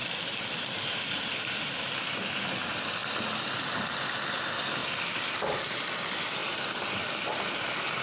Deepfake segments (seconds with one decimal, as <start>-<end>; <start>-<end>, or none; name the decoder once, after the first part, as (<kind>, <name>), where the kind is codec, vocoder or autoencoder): none